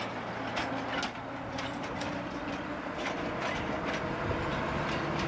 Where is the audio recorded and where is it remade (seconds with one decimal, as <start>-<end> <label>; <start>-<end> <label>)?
0.0-5.3 recorded